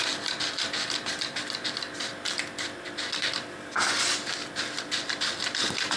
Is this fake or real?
real